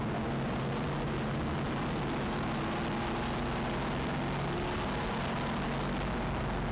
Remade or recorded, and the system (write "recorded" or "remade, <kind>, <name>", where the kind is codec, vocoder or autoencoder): recorded